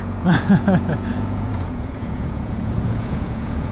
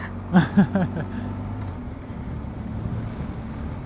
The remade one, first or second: first